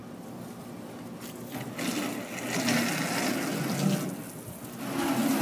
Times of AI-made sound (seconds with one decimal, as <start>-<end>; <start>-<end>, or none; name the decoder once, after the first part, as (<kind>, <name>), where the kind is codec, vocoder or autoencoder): none